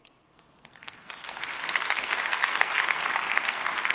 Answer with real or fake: fake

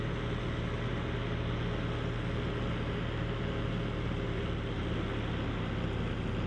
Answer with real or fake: real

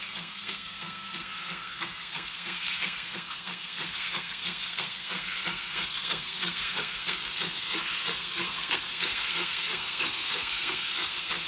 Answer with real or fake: fake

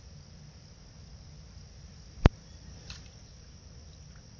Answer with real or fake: real